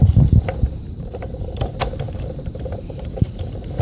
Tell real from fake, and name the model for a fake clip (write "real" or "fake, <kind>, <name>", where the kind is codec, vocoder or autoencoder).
fake, vocoder, BigVGAN v2